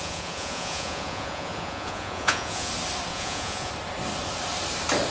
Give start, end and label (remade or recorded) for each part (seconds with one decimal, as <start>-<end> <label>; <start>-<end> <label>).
0.0-2.7 remade; 2.7-3.1 recorded; 3.1-3.7 remade; 3.7-5.1 recorded